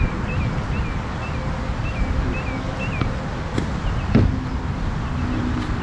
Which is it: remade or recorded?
recorded